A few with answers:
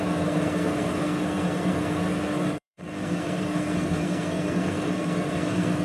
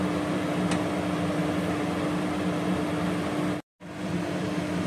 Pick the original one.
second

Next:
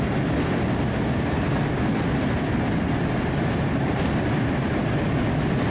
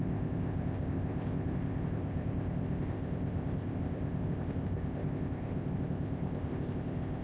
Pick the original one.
first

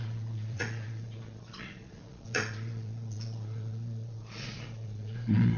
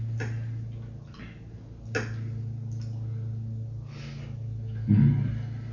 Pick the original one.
second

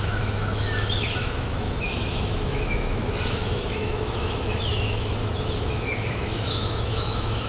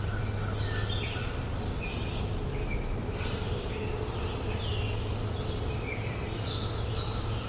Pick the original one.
second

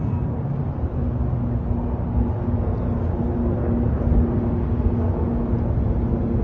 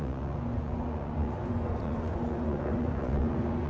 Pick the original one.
first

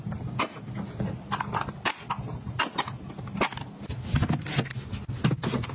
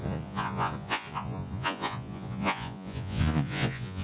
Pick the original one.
first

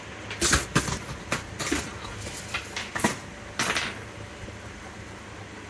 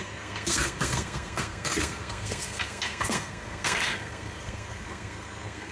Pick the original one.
first